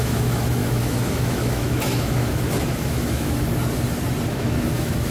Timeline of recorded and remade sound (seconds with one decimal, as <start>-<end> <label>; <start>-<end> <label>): 0.0-3.5 remade; 3.5-4.3 recorded; 4.3-5.1 remade